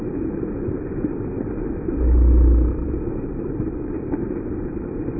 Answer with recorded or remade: recorded